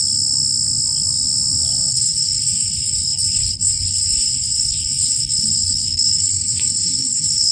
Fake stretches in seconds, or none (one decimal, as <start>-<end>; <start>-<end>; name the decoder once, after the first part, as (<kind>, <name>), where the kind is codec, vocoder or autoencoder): 1.9-7.5 (codec, HILCodec)